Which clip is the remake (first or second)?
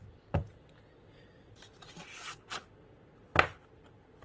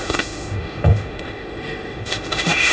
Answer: second